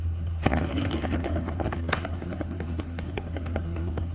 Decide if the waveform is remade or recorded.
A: remade